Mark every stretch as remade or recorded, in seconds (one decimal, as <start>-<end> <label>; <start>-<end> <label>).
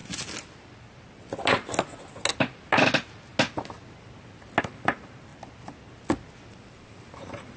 0.0-4.6 recorded; 4.6-5.3 remade; 5.3-6.5 recorded; 6.5-7.6 remade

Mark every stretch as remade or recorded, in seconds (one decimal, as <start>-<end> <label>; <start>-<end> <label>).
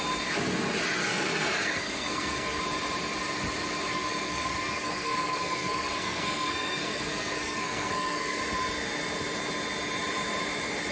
0.0-1.0 recorded; 1.0-2.6 remade; 2.6-3.9 recorded; 3.9-8.4 remade; 8.4-10.9 recorded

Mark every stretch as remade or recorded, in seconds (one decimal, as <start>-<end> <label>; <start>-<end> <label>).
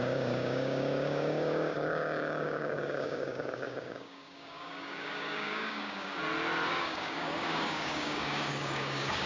0.0-6.2 remade; 6.2-6.7 recorded; 6.7-9.3 remade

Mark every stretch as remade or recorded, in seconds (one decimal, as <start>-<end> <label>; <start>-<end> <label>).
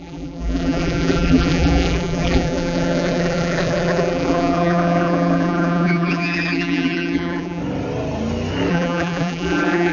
0.0-7.6 remade; 7.6-8.7 recorded; 8.7-9.9 remade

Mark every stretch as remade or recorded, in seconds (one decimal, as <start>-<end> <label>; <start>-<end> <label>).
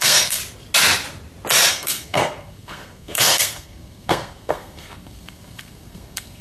0.0-0.4 remade; 0.4-1.7 recorded; 1.7-6.4 remade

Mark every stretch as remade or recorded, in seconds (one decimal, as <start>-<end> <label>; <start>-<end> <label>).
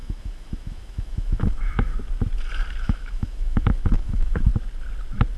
0.0-1.9 remade; 1.9-2.8 recorded; 2.8-4.5 remade; 4.5-5.4 recorded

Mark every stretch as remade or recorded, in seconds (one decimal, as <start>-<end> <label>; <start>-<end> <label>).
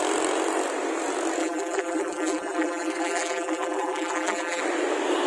0.0-1.4 recorded; 1.4-4.6 remade; 4.6-5.3 recorded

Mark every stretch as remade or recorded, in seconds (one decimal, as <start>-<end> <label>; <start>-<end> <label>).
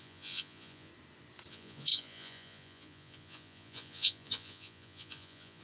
0.0-0.9 remade; 0.9-1.5 recorded; 1.5-5.6 remade